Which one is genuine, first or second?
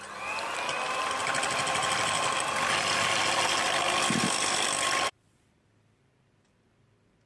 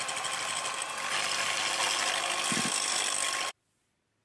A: second